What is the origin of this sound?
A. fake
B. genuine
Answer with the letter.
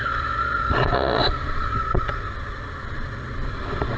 A